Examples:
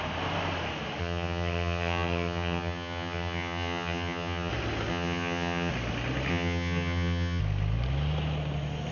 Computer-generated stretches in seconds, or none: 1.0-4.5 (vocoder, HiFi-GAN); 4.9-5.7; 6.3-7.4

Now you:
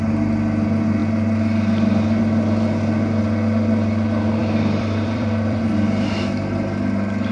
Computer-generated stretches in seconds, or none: 4.4-5.6 (vocoder, BigVGAN v2)

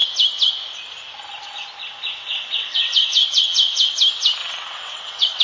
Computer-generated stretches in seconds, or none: 2.2-3.9 (vocoder, WaveNeXt); 4.4-5.4

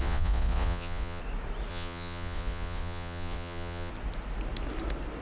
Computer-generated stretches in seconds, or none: 0.0-1.2 (vocoder, Vocos); 1.7-3.9

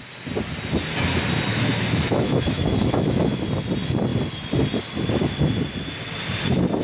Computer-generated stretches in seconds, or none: 1.5-3.4 (autoencoder, DAC-VAE)

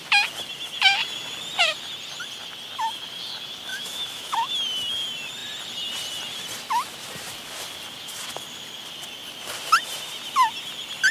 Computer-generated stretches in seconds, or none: 3.7-4.5 (autoencoder, DAC-VAE)

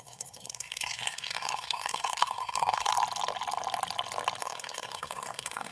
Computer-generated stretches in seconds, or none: 0.0-2.9 (codec, SNAC); 4.4-5.7